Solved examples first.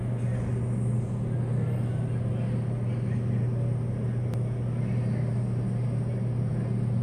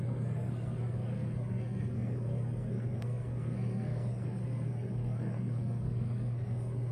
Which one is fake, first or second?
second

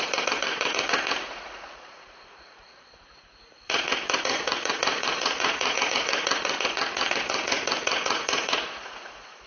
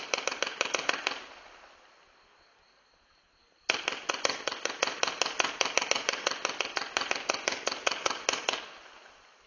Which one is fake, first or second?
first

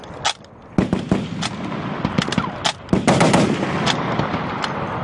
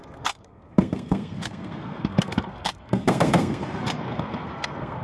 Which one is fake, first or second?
second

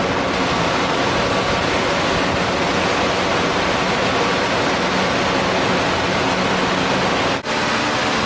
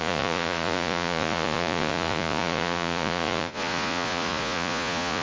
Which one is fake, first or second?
second